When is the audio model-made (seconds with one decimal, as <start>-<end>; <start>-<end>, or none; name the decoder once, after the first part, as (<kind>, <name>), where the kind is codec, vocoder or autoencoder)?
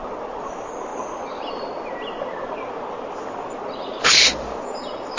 0.0-0.5 (vocoder, BigVGAN v2)